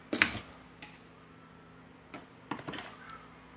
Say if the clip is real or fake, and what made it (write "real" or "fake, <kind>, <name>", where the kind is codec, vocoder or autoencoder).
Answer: real